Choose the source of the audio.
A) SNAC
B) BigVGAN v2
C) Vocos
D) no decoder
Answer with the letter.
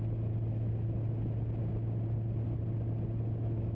D